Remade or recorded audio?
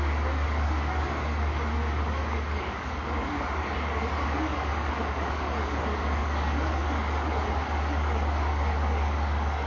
remade